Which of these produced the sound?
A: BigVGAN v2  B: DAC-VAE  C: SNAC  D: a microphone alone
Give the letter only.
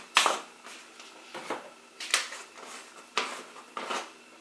D